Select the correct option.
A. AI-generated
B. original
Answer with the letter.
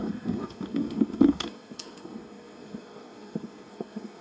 A